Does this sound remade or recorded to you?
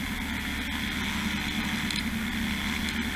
recorded